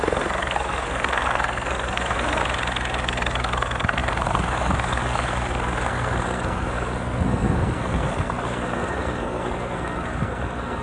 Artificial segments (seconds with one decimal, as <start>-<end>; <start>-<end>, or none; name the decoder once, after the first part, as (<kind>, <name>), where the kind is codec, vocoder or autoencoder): 0.0-2.4 (codec, SNAC); 3.0-10.8